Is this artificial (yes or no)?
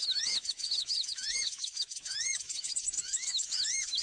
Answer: yes